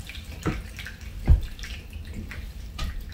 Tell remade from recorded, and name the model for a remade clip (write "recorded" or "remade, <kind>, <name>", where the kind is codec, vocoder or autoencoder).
remade, vocoder, BigVGAN v2